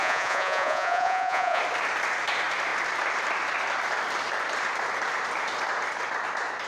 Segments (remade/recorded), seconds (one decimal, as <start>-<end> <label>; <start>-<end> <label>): 0.0-1.6 remade; 1.6-6.7 recorded